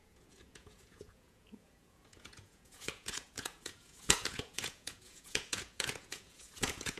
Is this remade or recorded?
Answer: remade